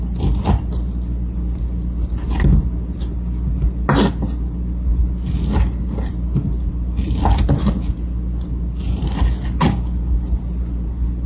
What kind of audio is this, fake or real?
real